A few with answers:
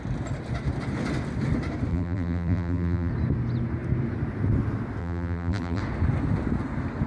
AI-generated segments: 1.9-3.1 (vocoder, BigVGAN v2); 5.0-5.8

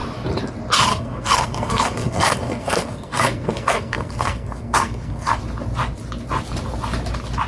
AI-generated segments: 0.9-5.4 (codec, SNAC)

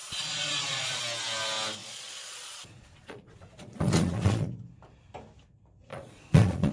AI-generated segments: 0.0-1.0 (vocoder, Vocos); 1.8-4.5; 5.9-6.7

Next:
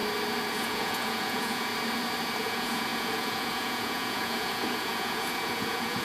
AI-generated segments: 0.5-1.7 (vocoder, Vocos); 2.4-6.0

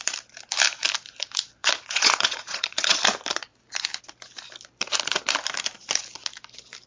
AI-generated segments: 1.6-3.0 (vocoder, Vocos)

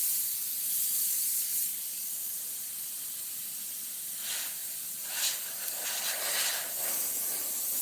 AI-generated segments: none

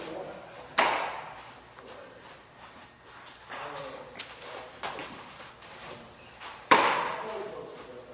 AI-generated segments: 2.0-3.8 (vocoder, BigVGAN v2); 5.0-6.8

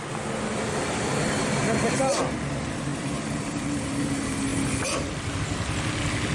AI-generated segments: 2.9-4.1 (vocoder, BigVGAN v2)